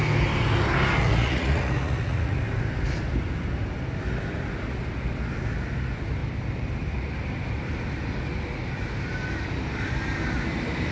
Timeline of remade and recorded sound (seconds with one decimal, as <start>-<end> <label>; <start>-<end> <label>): 0.0-1.0 recorded; 1.0-2.4 remade; 2.4-10.9 recorded